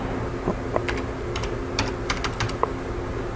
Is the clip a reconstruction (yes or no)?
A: no